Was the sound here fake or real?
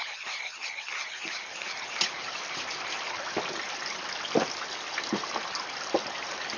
real